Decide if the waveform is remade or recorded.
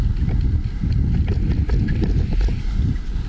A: recorded